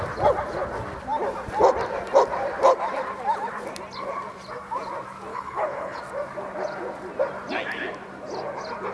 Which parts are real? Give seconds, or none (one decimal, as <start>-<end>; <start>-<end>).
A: 0.0-5.3; 6.0-8.9